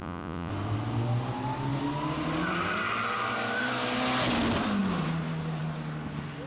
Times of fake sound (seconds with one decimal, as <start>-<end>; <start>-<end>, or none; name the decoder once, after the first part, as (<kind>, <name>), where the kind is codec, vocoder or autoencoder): 0.0-0.5 (vocoder, Vocos)